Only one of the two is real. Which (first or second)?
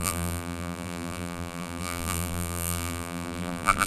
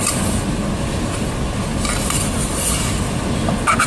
second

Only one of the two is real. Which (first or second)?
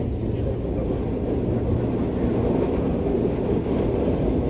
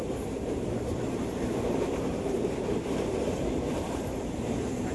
first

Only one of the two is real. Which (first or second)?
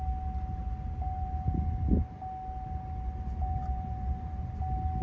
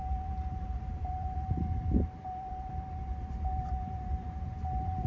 first